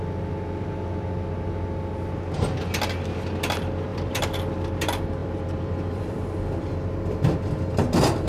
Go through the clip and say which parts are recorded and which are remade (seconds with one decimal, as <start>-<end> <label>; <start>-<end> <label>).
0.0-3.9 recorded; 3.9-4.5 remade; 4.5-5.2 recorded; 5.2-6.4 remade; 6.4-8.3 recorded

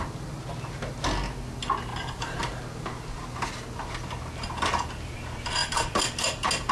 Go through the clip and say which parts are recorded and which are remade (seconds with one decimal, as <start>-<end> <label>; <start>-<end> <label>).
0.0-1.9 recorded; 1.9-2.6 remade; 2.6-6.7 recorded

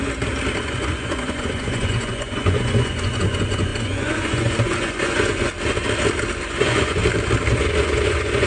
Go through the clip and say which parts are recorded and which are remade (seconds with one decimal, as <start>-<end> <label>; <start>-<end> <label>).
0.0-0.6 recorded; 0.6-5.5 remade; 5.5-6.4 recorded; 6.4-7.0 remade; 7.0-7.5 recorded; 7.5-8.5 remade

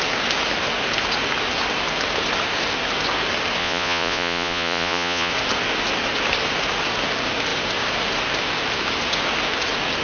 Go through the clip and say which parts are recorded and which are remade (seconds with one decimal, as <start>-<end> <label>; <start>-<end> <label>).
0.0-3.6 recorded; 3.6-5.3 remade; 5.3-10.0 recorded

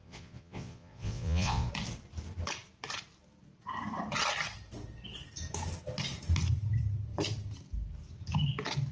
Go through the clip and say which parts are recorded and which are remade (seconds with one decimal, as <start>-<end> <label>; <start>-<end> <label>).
0.0-1.7 remade; 1.7-8.9 recorded

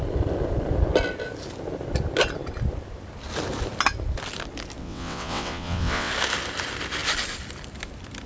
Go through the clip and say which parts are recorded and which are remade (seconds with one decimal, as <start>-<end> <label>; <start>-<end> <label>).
0.0-4.8 recorded; 4.8-6.1 remade; 6.1-8.3 recorded

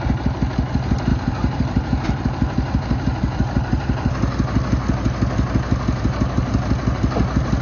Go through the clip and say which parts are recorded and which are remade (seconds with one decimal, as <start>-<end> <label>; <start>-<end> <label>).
0.0-1.1 recorded; 1.1-4.1 remade; 4.1-7.6 recorded